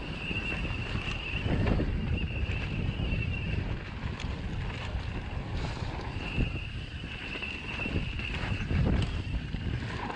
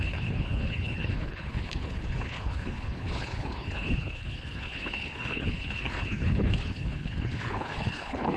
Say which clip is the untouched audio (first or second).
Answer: first